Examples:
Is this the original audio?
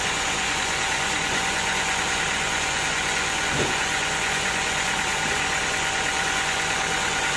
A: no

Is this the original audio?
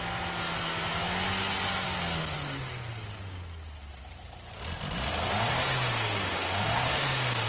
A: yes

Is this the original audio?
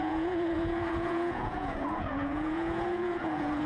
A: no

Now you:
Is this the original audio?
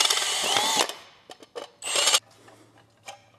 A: yes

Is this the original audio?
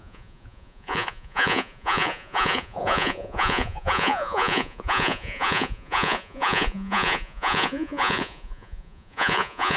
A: no